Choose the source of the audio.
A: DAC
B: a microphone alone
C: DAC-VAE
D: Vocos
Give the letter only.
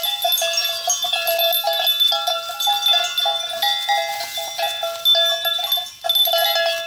B